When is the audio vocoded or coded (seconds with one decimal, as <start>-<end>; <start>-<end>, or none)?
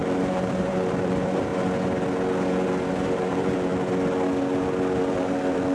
0.0-1.5; 2.9-3.7; 5.0-5.7